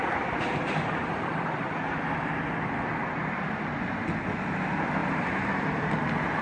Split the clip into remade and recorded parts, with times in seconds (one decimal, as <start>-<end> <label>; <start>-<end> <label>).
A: 0.0-5.0 recorded; 5.0-5.8 remade; 5.8-6.4 recorded